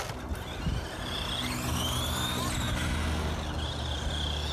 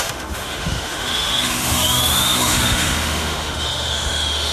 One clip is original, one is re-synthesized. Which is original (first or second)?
first